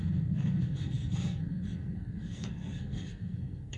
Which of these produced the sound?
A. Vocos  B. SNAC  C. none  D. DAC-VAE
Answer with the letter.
B